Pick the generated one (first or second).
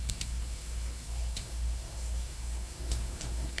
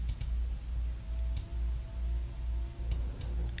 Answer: first